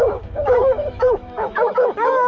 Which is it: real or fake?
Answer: fake